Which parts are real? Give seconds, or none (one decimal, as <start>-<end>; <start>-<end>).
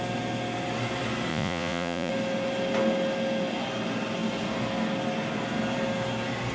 0.0-1.3; 2.1-6.5